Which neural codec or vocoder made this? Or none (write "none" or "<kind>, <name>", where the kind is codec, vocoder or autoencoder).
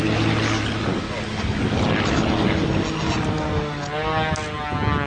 none